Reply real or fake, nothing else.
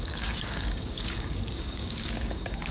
fake